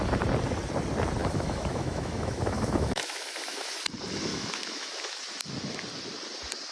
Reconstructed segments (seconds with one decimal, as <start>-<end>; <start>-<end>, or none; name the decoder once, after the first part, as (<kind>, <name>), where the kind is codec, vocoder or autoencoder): 1.2-3.7 (autoencoder, DAC-VAE); 4.3-5.2